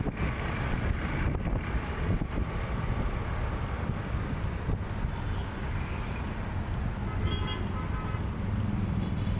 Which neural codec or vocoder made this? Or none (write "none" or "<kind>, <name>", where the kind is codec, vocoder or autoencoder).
none